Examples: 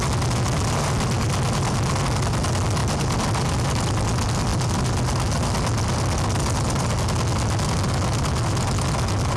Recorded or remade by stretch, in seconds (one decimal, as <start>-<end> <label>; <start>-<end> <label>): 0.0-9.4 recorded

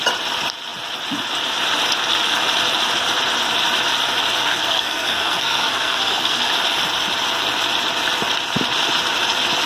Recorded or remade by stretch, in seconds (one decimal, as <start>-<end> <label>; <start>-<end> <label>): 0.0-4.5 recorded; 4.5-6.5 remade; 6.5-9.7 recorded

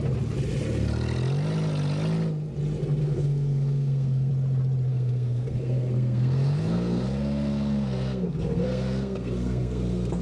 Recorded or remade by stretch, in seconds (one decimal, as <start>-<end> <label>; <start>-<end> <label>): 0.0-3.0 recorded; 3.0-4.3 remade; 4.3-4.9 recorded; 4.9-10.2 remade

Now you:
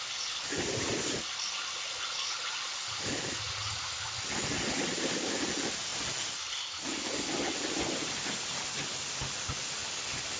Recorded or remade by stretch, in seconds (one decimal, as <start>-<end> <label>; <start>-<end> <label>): 0.0-10.4 recorded

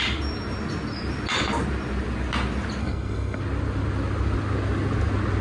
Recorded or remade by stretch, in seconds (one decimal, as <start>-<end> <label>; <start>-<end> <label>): 0.0-2.8 recorded; 2.8-3.4 remade; 3.4-5.4 recorded

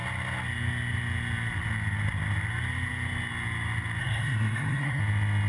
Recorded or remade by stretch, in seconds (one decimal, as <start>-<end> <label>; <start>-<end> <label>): 0.0-4.0 recorded; 4.0-5.0 remade; 5.0-5.5 recorded

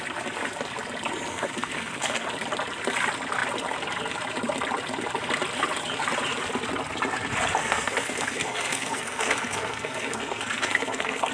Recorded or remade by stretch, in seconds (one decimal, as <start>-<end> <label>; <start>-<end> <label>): 0.0-1.3 recorded; 1.3-2.3 remade; 2.3-7.6 recorded; 7.6-11.3 remade

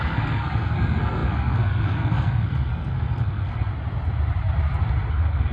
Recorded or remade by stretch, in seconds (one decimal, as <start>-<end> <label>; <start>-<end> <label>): 0.0-3.7 remade; 3.7-5.1 recorded; 5.1-5.5 remade